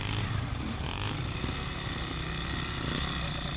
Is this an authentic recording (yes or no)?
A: yes